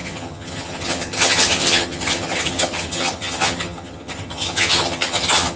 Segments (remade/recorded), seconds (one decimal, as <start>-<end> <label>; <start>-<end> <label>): 0.0-5.6 remade